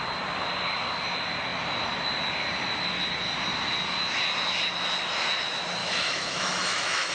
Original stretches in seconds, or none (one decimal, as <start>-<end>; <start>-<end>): 0.0-5.8